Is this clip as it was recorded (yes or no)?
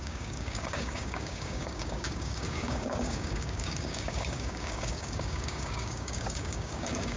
no